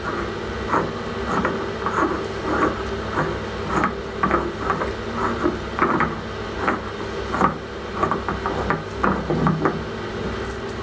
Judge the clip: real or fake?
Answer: real